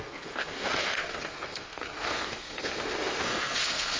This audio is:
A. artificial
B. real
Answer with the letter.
A